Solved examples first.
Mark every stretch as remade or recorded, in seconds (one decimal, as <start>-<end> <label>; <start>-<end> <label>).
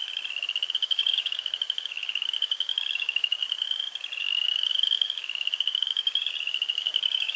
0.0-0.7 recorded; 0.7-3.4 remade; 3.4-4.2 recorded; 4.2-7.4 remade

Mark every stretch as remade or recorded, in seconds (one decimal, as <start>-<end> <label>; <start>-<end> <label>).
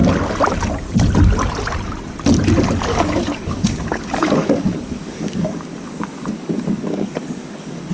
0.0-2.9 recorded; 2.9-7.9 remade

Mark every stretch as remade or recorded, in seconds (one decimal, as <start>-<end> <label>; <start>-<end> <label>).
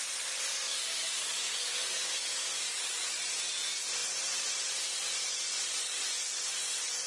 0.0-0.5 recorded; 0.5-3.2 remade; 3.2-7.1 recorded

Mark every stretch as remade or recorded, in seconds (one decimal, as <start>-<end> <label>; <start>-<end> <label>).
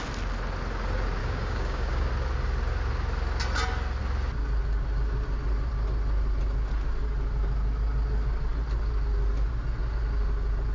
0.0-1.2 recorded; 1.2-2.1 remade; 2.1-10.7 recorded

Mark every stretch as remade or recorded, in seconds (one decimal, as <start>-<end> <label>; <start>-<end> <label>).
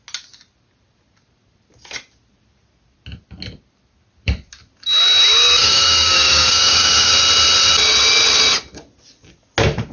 0.0-5.6 recorded; 5.6-7.1 remade; 7.1-9.9 recorded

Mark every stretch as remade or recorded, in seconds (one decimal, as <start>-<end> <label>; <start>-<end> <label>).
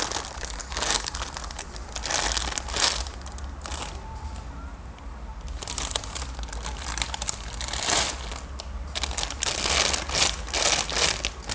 0.0-0.6 recorded; 0.6-1.1 remade; 1.1-11.5 recorded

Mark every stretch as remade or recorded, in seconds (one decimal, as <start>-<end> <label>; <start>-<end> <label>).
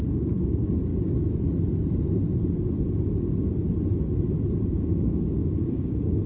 0.0-0.9 remade; 0.9-4.7 recorded; 4.7-6.3 remade